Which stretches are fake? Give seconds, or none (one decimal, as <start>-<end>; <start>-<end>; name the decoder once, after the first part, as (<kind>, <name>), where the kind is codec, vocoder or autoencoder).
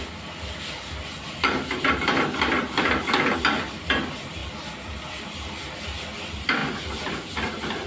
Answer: none